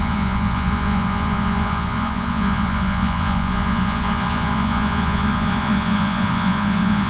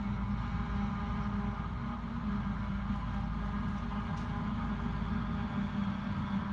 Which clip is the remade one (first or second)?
first